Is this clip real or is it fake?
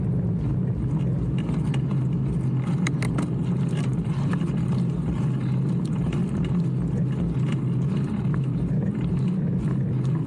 real